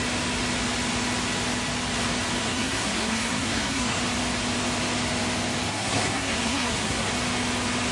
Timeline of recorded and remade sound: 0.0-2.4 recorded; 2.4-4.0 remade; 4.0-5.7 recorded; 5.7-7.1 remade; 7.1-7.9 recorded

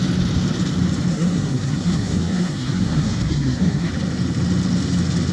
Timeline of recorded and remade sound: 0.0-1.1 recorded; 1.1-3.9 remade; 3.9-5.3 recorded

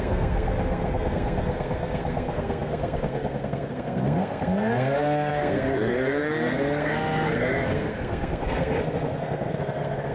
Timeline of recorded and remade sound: 0.0-10.1 remade

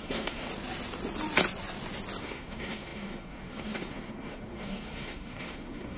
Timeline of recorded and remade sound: 0.0-0.5 remade; 0.5-2.2 recorded; 2.2-6.0 remade